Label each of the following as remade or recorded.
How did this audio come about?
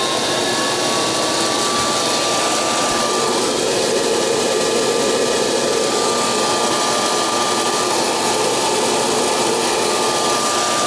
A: recorded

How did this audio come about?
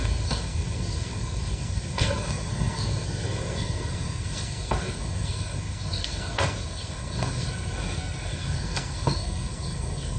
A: remade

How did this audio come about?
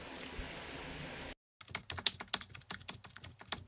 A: recorded